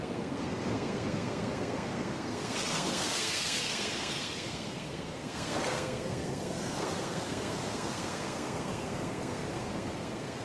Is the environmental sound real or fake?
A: fake